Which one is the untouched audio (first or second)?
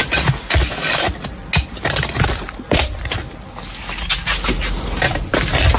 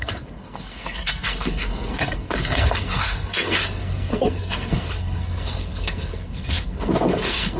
first